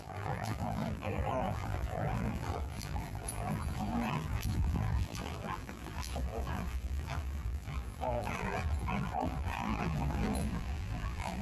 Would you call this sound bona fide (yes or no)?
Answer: no